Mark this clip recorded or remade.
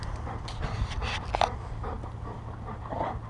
recorded